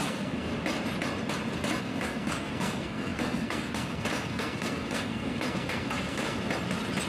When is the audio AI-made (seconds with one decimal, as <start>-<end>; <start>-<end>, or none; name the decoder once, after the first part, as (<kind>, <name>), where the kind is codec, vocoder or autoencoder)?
0.0-0.5 (codec, SNAC); 1.8-6.4